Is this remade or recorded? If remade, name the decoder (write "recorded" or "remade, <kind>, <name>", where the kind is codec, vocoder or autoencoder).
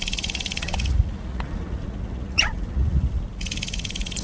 remade, vocoder, Vocos